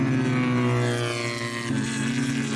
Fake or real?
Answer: real